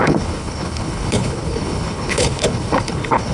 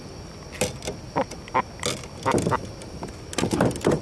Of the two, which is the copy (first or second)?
first